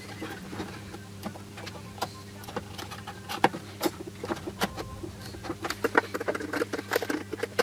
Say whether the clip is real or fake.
real